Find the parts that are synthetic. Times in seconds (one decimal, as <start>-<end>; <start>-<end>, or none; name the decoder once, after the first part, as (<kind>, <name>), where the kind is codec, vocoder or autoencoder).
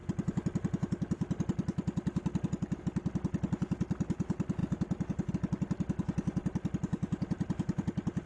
none